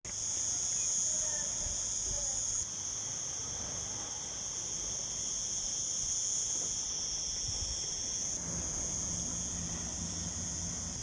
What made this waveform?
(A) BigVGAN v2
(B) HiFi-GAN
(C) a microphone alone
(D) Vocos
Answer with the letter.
C